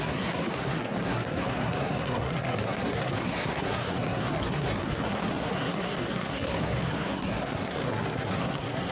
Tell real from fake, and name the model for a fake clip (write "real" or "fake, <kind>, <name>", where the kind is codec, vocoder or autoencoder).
fake, codec, SNAC